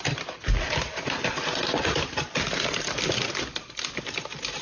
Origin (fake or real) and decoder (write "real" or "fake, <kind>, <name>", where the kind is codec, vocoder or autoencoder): real